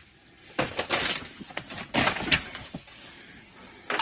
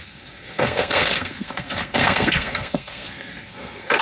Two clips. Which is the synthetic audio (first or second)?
second